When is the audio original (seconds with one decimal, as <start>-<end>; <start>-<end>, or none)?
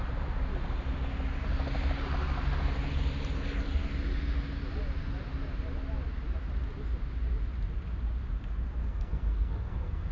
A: 0.0-8.8